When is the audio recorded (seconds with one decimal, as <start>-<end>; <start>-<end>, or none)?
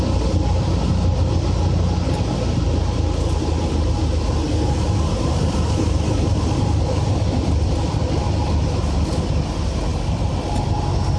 0.0-11.2